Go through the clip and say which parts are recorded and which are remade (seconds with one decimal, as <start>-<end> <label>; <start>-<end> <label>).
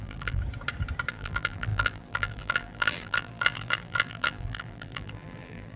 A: 0.0-0.4 remade; 0.4-1.1 recorded; 1.1-5.8 remade